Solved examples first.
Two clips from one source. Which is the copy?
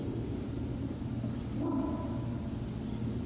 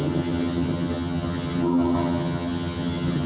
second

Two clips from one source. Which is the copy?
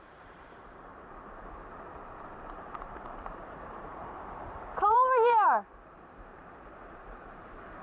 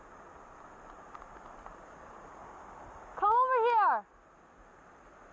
first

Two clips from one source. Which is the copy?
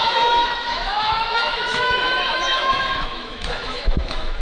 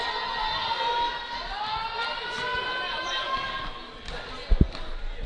first